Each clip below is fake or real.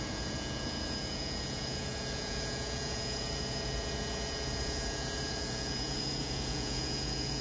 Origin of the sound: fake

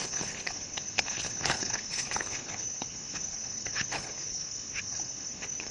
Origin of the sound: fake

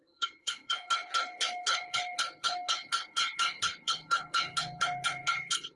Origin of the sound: fake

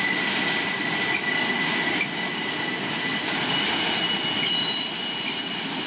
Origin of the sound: real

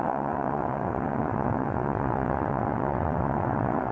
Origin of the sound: fake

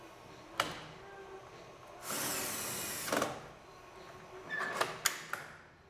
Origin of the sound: real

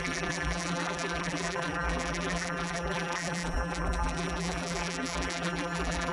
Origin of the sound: fake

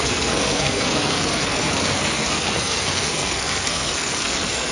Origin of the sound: fake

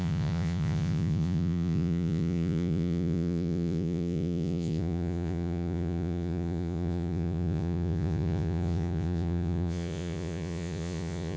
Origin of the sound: fake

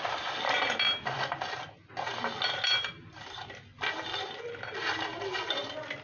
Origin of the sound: real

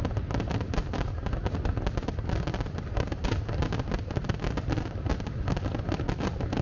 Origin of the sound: real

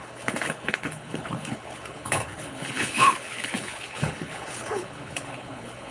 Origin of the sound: fake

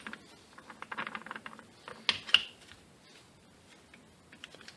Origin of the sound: real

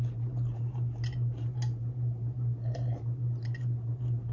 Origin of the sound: real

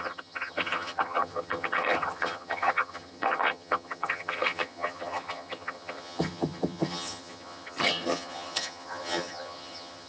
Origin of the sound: fake